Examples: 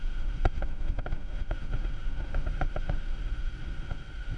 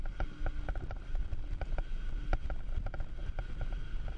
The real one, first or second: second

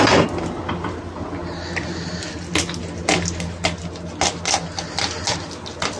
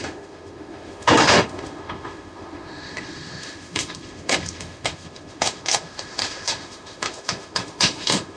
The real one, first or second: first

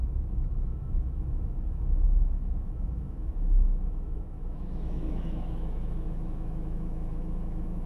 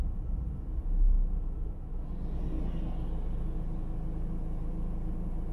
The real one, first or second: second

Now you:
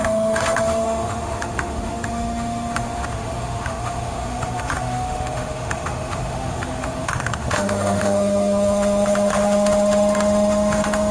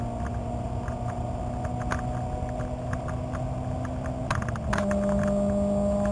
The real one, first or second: second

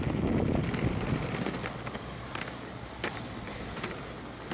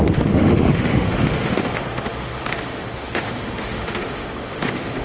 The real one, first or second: first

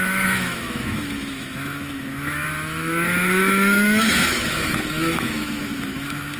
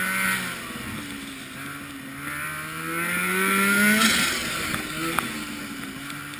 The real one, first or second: second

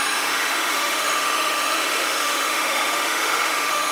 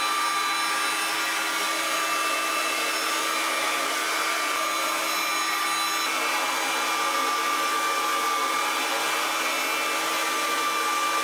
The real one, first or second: second